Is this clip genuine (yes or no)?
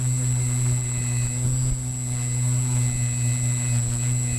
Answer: yes